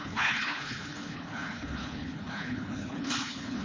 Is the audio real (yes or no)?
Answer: no